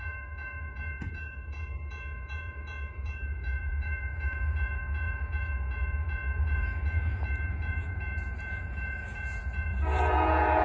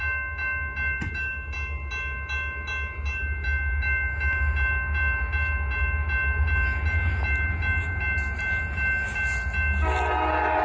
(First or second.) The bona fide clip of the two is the second